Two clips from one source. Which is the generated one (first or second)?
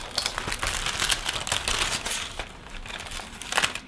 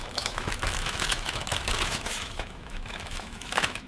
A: second